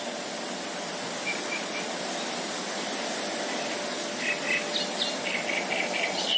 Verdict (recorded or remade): recorded